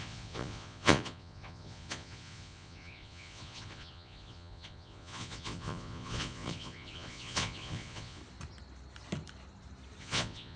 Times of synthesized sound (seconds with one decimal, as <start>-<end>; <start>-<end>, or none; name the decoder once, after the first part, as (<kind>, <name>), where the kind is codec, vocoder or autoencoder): 0.0-8.2 (vocoder, Vocos); 10.0-10.6